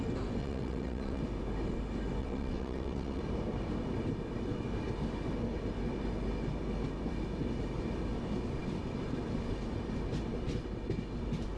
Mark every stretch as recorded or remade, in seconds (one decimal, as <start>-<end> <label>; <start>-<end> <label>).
0.0-0.4 recorded; 0.4-1.2 remade; 1.2-2.2 recorded; 2.2-3.2 remade; 3.2-11.6 recorded